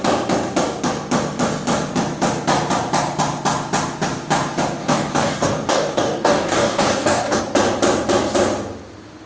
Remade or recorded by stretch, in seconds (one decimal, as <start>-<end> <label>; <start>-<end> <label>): 0.0-4.8 recorded; 4.8-7.4 remade; 7.4-9.3 recorded